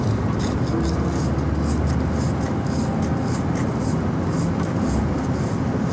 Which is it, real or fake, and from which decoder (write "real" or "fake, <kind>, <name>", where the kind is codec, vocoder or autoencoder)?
real